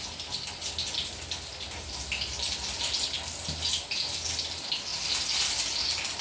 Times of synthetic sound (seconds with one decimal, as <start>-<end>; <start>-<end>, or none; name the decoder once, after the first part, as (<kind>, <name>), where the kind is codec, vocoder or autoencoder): none